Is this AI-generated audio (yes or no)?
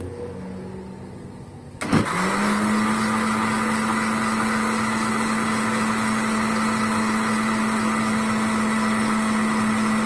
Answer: no